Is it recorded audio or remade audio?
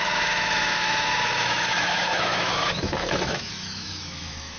remade